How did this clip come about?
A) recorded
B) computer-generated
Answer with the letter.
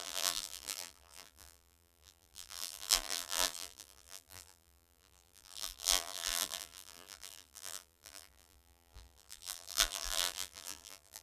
B